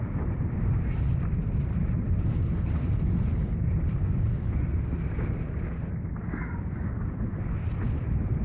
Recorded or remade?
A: recorded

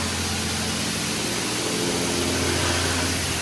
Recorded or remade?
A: recorded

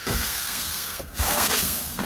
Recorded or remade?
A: remade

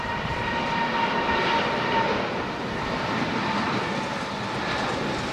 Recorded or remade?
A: recorded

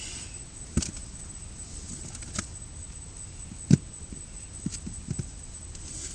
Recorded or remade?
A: recorded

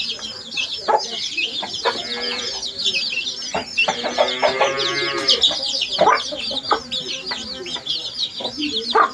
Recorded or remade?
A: recorded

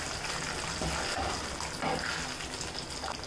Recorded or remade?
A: recorded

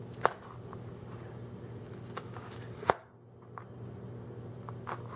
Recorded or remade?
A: recorded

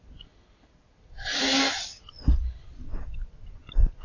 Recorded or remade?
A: recorded